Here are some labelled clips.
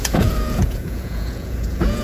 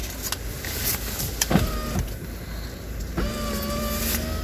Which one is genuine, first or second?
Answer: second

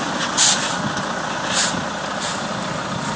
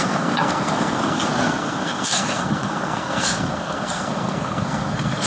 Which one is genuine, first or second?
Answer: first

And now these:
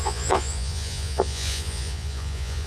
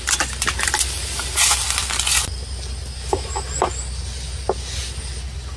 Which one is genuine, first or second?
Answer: second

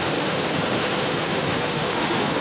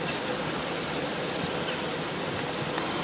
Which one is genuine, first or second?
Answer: second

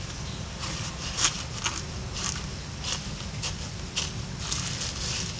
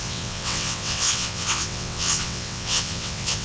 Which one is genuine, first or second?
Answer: first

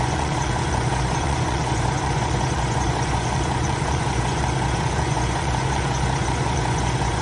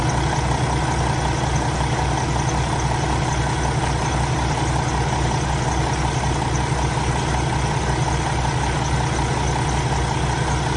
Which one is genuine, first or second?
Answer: second